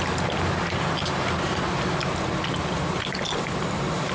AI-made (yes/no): no